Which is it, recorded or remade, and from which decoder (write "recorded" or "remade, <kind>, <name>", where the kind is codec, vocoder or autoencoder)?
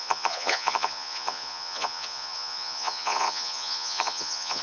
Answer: remade, vocoder, Vocos